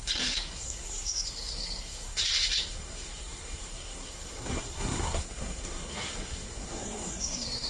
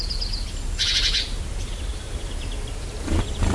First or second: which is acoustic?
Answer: second